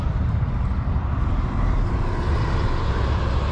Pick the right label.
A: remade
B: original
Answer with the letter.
B